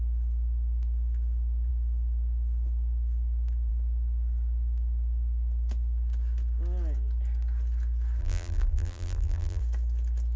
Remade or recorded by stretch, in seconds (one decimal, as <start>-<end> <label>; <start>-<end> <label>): 0.0-8.2 recorded; 8.2-9.6 remade; 9.6-10.4 recorded